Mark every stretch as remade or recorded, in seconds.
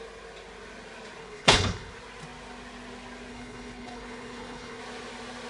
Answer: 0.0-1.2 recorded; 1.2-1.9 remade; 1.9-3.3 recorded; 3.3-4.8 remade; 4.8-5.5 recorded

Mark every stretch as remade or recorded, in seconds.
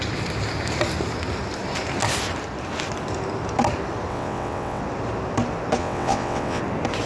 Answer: 0.0-4.1 recorded; 4.1-4.8 remade; 4.8-5.8 recorded; 5.8-6.6 remade; 6.6-7.1 recorded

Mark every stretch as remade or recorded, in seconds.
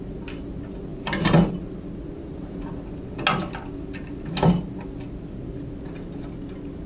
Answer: 0.0-0.9 recorded; 0.9-1.5 remade; 1.5-6.9 recorded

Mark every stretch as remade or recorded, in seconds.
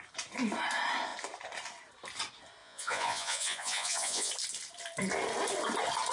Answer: 0.0-2.6 recorded; 2.6-4.3 remade; 4.3-6.1 recorded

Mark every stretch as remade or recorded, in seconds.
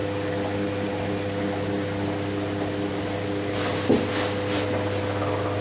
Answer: 0.0-5.6 recorded